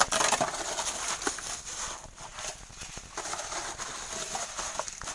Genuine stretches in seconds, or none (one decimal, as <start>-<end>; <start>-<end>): 0.0-5.1